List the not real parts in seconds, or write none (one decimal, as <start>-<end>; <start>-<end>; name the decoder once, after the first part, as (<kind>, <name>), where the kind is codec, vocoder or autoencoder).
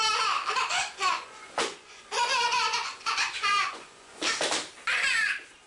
0.8-4.2 (vocoder, Vocos)